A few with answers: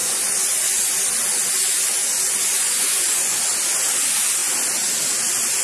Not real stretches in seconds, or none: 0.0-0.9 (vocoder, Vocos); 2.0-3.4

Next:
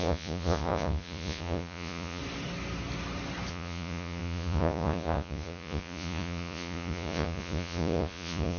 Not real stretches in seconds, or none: 0.0-2.2 (vocoder, Vocos); 3.5-8.6

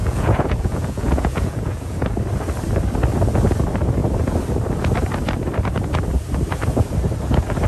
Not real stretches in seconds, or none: 0.0-2.0 (vocoder, Vocos)